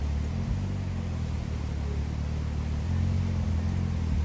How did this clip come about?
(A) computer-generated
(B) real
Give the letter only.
B